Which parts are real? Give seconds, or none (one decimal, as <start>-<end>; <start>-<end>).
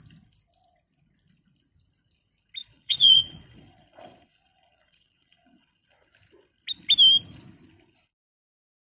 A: 0.0-2.6; 6.1-8.9